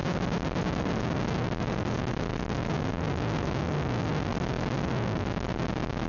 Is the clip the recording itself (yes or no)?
yes